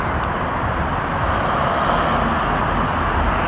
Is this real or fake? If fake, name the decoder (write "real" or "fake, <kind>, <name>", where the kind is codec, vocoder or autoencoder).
real